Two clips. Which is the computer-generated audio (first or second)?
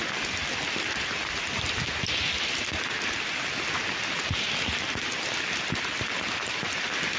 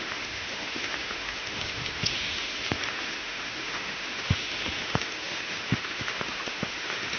second